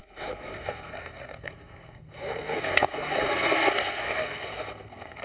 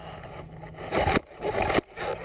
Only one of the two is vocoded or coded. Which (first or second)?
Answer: first